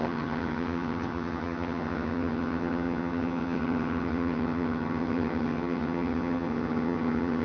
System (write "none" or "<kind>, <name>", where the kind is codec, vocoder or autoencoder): vocoder, HiFi-GAN